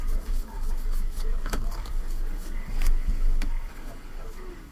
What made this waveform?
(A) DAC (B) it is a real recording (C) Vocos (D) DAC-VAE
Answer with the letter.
A